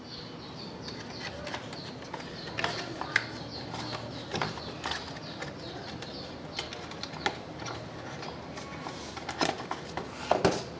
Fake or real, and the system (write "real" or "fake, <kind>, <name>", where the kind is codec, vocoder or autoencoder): real